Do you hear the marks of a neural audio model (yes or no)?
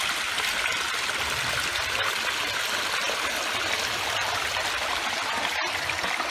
no